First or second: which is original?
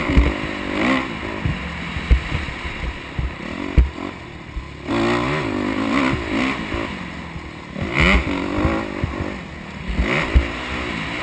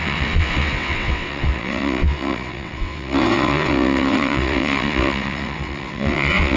first